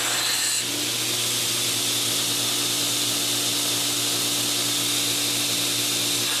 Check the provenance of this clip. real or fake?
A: real